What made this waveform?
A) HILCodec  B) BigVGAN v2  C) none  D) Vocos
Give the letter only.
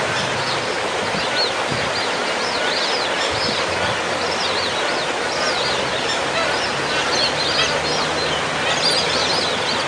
C